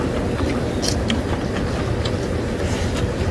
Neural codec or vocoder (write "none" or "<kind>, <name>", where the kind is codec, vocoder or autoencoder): none